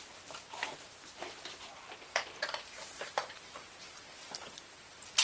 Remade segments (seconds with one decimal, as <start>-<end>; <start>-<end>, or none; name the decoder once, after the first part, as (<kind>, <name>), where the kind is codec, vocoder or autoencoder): none